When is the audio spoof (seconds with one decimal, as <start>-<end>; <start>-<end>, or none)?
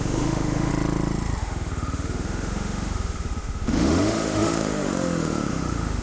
0.0-0.7; 1.4-6.0